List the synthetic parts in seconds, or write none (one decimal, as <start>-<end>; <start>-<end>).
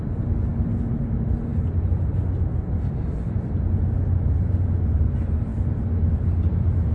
none